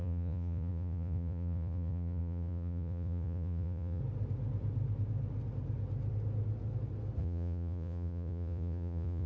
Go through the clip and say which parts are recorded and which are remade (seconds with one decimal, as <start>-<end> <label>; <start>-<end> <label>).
0.0-4.0 remade; 4.0-7.2 recorded; 7.2-9.3 remade